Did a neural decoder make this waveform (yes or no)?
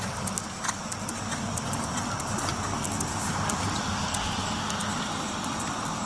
no